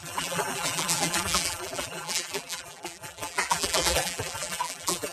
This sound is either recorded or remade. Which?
remade